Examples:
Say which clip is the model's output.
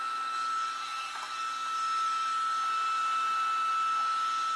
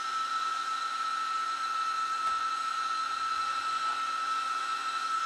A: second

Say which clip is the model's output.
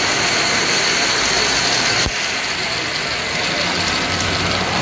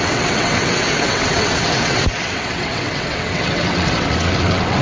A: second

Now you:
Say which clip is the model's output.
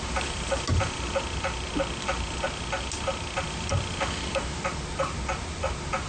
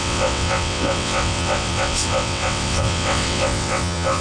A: second